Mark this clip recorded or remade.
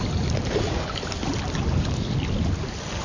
recorded